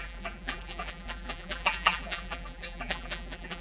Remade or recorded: remade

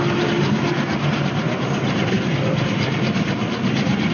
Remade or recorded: recorded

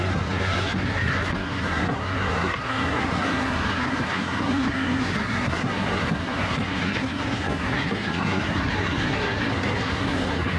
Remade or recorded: remade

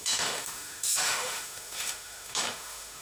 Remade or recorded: remade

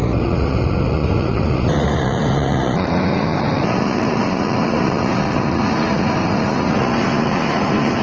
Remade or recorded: remade